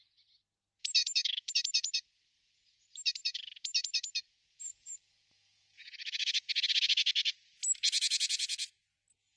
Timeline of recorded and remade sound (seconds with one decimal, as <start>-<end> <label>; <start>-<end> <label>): 0.0-1.0 recorded; 1.0-1.5 remade; 1.5-4.7 recorded; 4.7-6.5 remade; 6.5-9.4 recorded